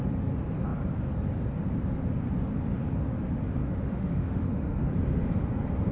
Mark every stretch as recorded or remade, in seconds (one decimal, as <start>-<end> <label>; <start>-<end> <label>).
0.0-3.6 recorded; 3.6-4.9 remade; 4.9-5.9 recorded